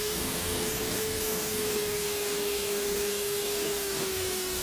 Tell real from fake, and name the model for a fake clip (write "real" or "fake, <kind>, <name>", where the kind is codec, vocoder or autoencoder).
fake, codec, DAC